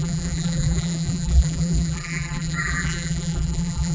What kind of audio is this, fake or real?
fake